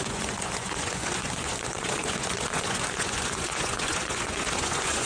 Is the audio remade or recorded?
remade